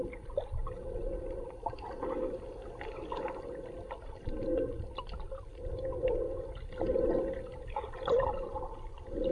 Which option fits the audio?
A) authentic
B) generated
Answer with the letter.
A